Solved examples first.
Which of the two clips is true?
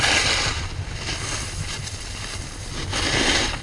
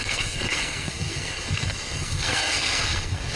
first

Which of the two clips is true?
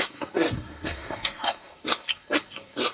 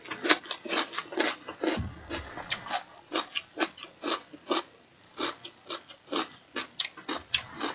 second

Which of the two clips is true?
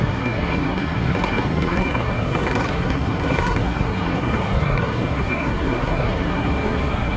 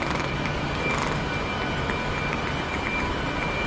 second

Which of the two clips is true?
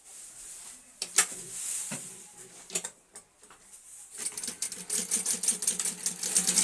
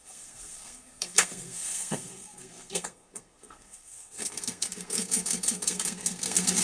first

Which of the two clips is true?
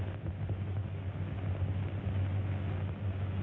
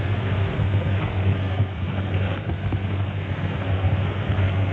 first